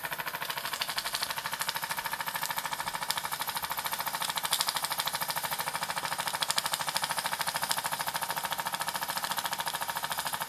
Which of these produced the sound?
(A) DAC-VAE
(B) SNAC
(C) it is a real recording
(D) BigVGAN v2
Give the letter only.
C